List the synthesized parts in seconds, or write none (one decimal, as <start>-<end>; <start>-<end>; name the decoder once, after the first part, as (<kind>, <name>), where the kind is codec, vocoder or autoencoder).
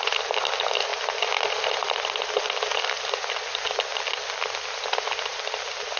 none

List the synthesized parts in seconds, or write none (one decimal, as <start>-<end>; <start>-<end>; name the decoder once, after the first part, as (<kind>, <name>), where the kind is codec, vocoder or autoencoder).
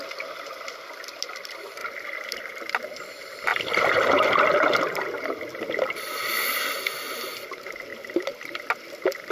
1.8-2.8 (vocoder, BigVGAN v2); 3.5-6.3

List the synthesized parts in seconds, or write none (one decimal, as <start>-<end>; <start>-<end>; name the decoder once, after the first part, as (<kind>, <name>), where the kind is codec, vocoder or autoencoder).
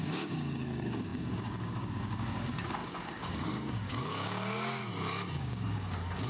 0.0-4.8 (codec, DAC); 5.4-6.3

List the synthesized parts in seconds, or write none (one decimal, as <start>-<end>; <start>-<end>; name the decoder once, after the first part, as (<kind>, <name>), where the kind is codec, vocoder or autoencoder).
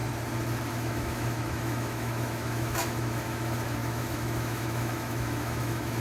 0.7-6.0 (autoencoder, DAC-VAE)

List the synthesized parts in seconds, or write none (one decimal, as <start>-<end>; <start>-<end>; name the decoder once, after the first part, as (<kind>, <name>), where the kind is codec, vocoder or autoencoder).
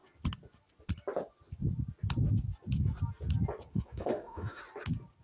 3.7-4.6 (autoencoder, DAC-VAE)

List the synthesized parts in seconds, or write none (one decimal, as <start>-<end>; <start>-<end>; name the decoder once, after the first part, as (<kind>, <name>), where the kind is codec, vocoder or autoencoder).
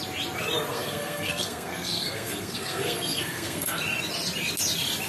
0.7-3.8 (codec, SNAC)